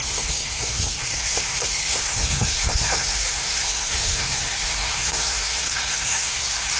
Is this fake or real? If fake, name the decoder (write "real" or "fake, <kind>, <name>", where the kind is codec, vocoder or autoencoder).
fake, codec, SNAC